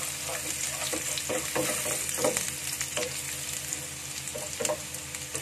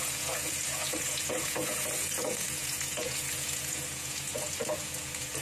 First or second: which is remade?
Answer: second